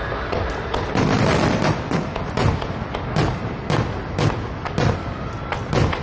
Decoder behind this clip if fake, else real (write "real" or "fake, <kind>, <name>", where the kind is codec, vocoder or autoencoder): real